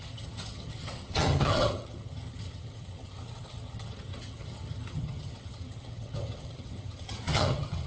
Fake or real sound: fake